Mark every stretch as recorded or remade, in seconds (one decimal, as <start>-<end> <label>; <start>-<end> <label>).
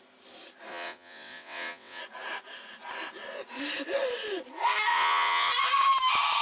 0.0-0.7 recorded; 0.7-2.0 remade; 2.0-4.9 recorded; 4.9-5.5 remade; 5.5-6.4 recorded